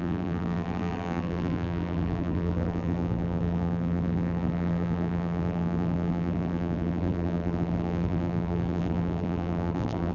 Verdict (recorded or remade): remade